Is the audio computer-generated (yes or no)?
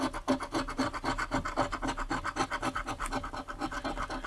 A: no